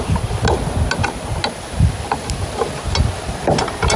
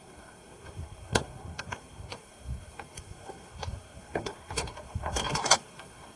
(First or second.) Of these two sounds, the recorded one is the first